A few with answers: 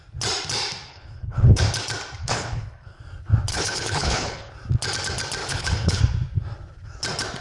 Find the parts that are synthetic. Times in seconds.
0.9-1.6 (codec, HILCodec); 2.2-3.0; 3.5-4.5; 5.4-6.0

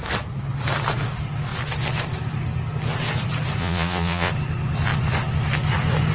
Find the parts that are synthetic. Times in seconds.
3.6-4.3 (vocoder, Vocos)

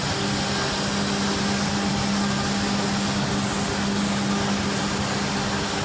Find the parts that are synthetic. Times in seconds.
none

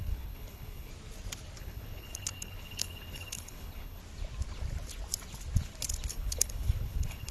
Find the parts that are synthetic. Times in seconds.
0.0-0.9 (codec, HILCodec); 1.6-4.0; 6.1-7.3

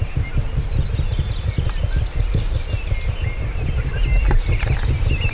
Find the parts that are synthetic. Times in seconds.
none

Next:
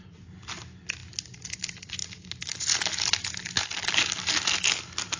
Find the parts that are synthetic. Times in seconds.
none

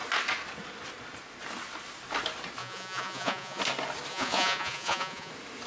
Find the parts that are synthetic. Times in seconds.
2.6-3.6 (vocoder, Vocos); 4.1-5.3